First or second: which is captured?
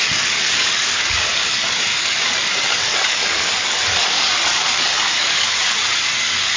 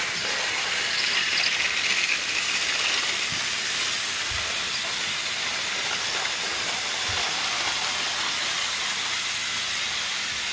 second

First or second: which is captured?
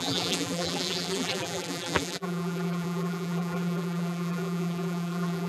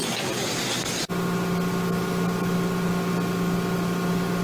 second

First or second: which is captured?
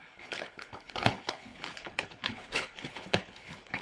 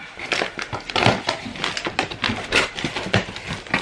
second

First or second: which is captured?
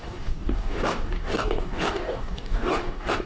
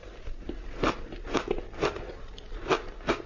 second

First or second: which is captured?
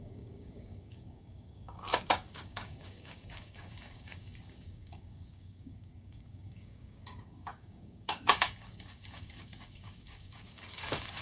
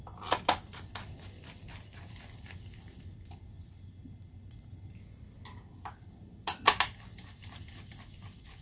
second